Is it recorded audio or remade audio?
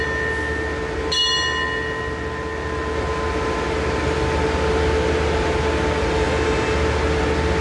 recorded